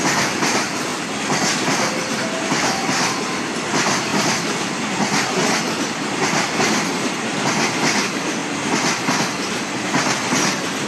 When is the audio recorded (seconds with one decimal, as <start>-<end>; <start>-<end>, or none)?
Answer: 0.0-10.9